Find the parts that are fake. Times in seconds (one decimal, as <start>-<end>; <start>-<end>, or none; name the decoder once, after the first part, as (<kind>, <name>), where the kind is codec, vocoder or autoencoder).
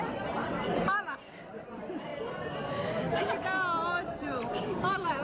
0.4-1.7 (vocoder, BigVGAN v2); 3.8-5.2